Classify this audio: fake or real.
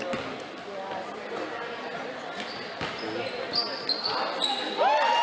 real